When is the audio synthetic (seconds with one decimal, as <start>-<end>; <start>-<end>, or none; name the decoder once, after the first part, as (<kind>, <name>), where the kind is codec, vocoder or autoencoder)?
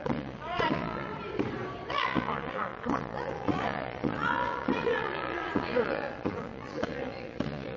0.0-1.1 (vocoder, Vocos); 1.9-7.8